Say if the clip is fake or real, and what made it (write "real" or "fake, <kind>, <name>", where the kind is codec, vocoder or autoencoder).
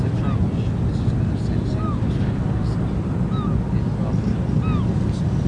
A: real